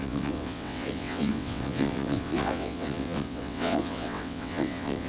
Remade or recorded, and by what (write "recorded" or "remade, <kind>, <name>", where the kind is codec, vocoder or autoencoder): remade, vocoder, WaveNeXt